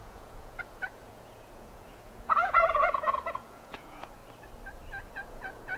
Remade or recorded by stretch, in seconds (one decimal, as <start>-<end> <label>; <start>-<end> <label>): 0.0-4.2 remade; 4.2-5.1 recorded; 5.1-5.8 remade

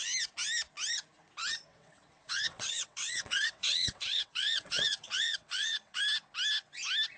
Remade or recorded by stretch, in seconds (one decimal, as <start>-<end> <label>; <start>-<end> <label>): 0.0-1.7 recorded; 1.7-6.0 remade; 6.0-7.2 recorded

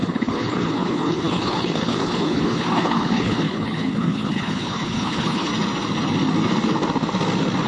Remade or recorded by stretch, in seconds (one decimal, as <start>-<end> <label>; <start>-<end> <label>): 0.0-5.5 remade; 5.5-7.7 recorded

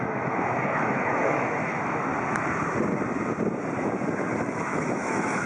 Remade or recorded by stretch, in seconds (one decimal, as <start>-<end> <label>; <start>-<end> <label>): 0.0-2.1 remade; 2.1-4.4 recorded; 4.4-5.5 remade

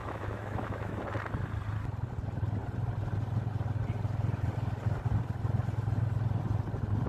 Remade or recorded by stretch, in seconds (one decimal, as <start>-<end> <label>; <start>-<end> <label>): 0.0-1.0 remade; 1.0-7.1 recorded

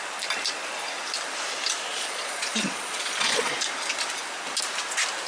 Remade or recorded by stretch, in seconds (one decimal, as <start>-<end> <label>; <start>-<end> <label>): 0.0-1.9 recorded; 1.9-3.5 remade; 3.5-5.3 recorded

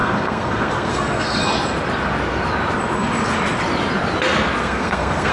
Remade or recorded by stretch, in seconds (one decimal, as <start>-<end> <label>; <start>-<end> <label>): 0.0-1.4 remade; 1.4-4.6 recorded; 4.6-5.3 remade